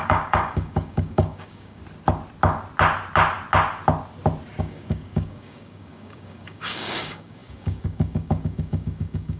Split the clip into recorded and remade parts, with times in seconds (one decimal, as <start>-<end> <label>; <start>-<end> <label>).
0.0-1.8 remade; 1.8-4.6 recorded; 4.6-9.4 remade